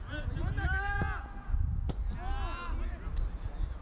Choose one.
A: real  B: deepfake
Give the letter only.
A